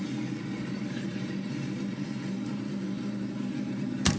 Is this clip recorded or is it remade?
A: remade